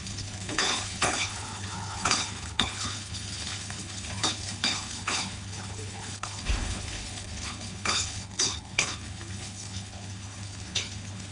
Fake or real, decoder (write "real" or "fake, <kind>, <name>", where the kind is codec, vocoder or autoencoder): fake, codec, HILCodec